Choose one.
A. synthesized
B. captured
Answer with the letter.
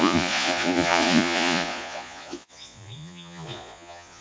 A